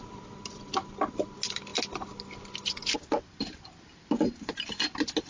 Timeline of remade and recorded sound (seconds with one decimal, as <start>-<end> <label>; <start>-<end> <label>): 0.0-5.3 recorded